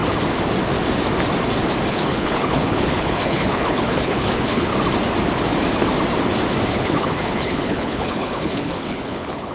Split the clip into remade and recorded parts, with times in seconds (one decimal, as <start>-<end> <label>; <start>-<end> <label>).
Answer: 0.0-1.9 recorded; 1.9-4.7 remade; 4.7-6.7 recorded; 6.7-9.5 remade